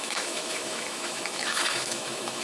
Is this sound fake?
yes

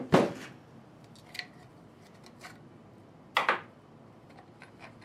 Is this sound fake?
no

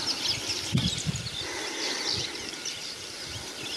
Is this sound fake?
no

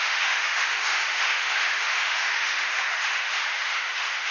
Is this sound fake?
yes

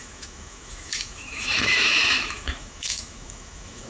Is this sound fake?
yes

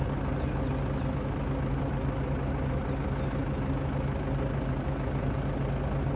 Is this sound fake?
no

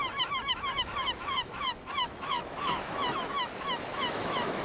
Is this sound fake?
yes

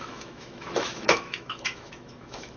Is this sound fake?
yes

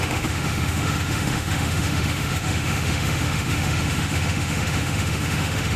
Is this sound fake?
yes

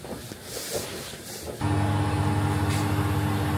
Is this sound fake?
no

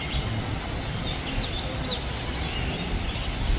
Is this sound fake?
no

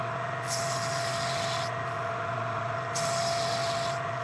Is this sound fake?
no